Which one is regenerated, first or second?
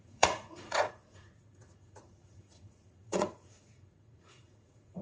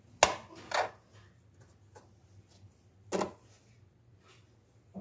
first